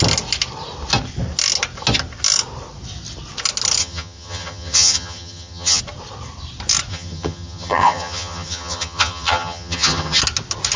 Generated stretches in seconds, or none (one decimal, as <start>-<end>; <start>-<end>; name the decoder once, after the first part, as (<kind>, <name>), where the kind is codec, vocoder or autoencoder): 3.8-5.8 (vocoder, HiFi-GAN); 6.9-10.2